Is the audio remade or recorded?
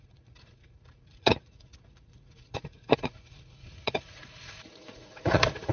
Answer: remade